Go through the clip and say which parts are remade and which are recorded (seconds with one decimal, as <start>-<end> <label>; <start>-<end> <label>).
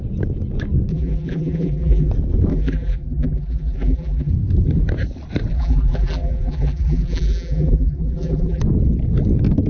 0.0-0.9 recorded; 0.9-2.1 remade; 2.1-2.5 recorded; 2.5-4.3 remade; 4.3-5.5 recorded; 5.5-8.6 remade; 8.6-9.7 recorded